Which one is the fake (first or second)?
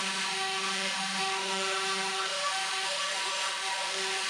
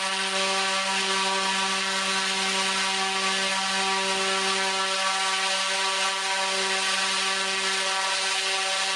first